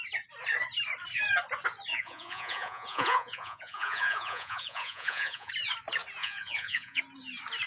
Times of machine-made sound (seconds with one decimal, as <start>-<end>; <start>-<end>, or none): 1.9-5.5; 6.2-7.0